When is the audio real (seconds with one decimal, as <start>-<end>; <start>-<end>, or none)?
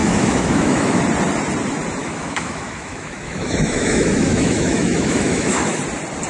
1.0-2.0; 5.8-6.3